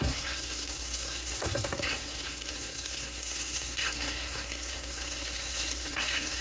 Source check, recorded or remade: remade